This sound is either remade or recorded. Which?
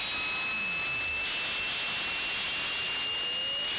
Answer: recorded